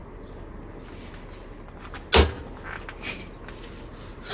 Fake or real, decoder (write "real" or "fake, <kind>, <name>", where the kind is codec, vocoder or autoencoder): real